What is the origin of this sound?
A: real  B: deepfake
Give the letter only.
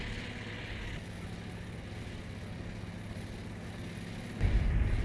A